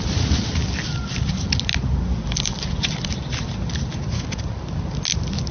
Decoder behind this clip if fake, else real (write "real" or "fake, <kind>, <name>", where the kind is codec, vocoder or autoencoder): real